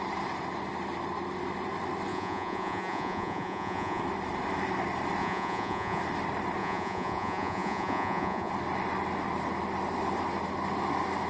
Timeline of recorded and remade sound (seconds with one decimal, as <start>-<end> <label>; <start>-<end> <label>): 0.0-2.1 recorded; 2.1-4.0 remade; 4.0-5.2 recorded; 5.2-6.0 remade; 6.0-6.6 recorded; 6.6-8.5 remade; 8.5-11.3 recorded